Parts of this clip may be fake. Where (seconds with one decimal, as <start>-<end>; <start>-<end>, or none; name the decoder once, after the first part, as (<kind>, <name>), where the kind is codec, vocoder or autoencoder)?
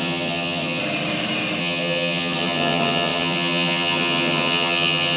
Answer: 0.0-0.8 (vocoder, HiFi-GAN); 1.6-5.2